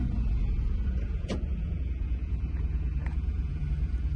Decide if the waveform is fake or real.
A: fake